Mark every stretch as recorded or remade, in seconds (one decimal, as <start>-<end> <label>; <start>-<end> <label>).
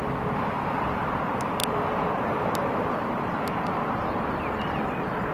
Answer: 0.0-1.6 recorded; 1.6-4.3 remade; 4.3-5.3 recorded